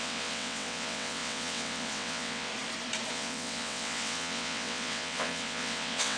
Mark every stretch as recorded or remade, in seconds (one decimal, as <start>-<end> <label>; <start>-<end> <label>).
0.0-2.5 remade; 2.5-3.1 recorded; 3.1-6.2 remade

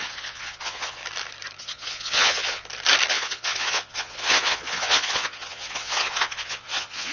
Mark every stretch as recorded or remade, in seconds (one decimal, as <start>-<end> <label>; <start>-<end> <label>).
0.0-1.0 remade; 1.0-1.6 recorded; 1.6-2.6 remade; 2.6-3.1 recorded; 3.1-7.1 remade

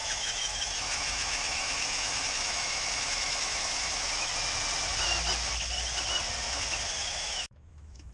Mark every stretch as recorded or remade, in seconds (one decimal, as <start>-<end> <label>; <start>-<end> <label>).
0.0-4.3 remade; 4.3-7.0 recorded; 7.0-8.1 remade

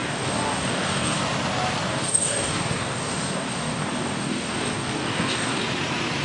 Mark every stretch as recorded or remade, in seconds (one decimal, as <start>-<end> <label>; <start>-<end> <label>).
0.0-1.2 remade; 1.2-1.9 recorded; 1.9-5.6 remade; 5.6-6.2 recorded

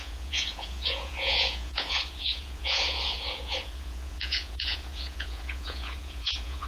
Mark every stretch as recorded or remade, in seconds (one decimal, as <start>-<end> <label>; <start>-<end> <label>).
0.0-6.7 remade

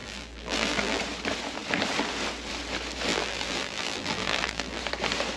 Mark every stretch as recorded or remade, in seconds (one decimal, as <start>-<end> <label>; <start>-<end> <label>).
0.0-1.0 remade; 1.0-3.1 recorded; 3.1-4.8 remade; 4.8-5.4 recorded

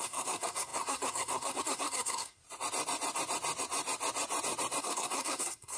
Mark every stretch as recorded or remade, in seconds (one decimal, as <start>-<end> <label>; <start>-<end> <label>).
0.0-2.4 remade; 2.4-4.8 recorded; 4.8-5.8 remade